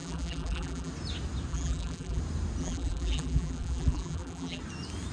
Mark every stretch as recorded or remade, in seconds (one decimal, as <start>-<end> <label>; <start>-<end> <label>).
0.0-0.9 remade; 0.9-1.5 recorded; 1.5-2.2 remade; 2.2-2.6 recorded; 2.6-4.6 remade; 4.6-5.1 recorded